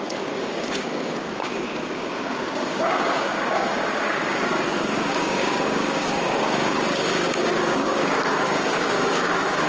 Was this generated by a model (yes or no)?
yes